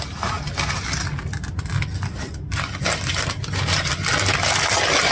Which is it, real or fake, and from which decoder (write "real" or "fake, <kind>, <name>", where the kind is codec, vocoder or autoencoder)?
real